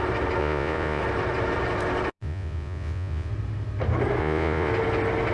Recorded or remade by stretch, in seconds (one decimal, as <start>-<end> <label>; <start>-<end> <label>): 0.0-0.4 recorded; 0.4-1.0 remade; 1.0-2.1 recorded; 2.1-3.3 remade; 3.3-4.2 recorded; 4.2-4.7 remade; 4.7-5.3 recorded